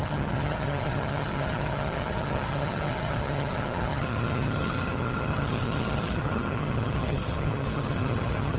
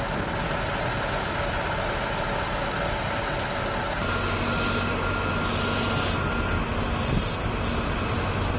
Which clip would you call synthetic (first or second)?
first